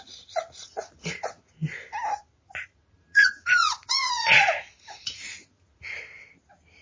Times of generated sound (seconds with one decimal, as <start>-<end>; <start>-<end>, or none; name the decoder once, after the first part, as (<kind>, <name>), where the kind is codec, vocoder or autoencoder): 0.6-1.5 (vocoder, Vocos); 2.7-6.0